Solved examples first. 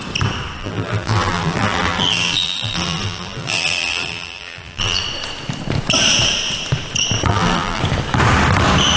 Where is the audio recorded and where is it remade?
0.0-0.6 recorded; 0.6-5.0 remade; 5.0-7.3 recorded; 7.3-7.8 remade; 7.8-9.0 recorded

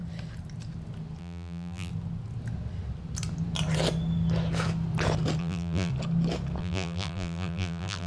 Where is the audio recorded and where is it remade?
0.0-1.2 recorded; 1.2-1.9 remade; 1.9-5.4 recorded; 5.4-5.9 remade; 5.9-6.6 recorded; 6.6-8.1 remade

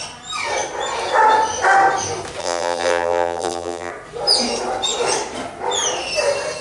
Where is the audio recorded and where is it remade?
0.0-2.4 recorded; 2.4-3.9 remade; 3.9-6.6 recorded